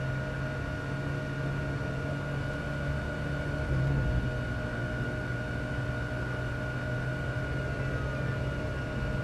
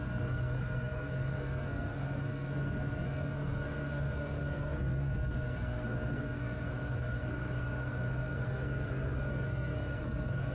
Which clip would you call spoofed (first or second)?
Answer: second